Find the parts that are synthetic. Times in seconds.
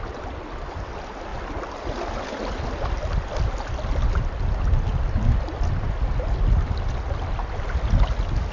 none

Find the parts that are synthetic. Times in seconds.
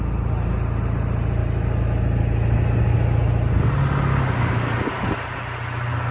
4.1-4.7 (codec, DAC)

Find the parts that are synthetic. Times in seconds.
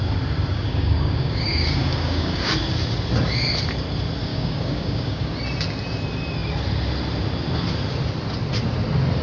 0.5-2.5 (codec, DAC); 4.3-5.3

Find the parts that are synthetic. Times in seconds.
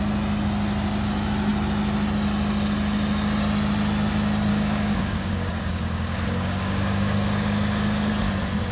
4.5-8.1 (codec, DAC)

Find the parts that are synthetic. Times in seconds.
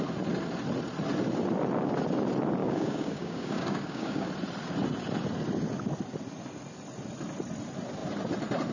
2.6-4.3 (codec, DAC)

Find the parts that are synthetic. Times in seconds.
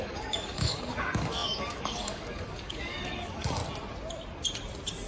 0.0-3.6 (codec, DAC)